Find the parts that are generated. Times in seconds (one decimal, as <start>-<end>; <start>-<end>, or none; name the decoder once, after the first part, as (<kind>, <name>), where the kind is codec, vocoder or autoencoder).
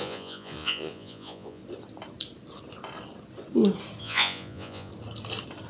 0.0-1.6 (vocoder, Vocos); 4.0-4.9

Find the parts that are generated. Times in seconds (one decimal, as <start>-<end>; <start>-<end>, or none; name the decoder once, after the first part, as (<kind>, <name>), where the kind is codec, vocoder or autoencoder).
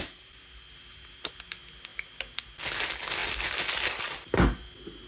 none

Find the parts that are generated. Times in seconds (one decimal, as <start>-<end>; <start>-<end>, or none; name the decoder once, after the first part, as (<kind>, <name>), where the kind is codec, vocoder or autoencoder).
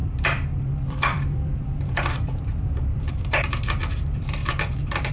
0.0-5.1 (vocoder, BigVGAN v2)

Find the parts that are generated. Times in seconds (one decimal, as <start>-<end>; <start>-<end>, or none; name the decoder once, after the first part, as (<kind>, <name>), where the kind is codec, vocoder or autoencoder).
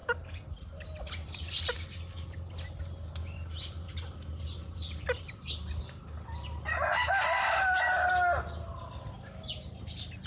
0.0-1.7 (vocoder, BigVGAN v2)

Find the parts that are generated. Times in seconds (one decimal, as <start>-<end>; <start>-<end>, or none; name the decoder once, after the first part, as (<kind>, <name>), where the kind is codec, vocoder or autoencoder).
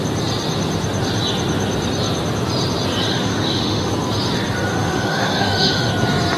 3.1-3.9 (autoencoder, DAC-VAE); 4.7-5.9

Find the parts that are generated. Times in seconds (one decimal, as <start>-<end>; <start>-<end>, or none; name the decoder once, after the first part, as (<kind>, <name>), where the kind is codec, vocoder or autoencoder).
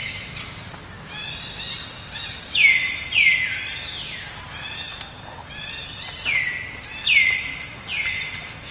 none